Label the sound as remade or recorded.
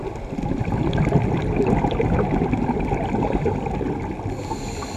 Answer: recorded